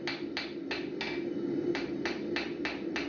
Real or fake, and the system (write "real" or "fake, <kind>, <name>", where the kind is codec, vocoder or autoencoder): real